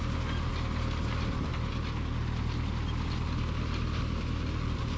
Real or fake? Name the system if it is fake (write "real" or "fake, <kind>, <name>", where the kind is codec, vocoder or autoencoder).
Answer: real